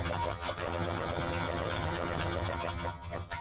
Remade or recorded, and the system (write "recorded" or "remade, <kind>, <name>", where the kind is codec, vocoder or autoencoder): remade, vocoder, HiFi-GAN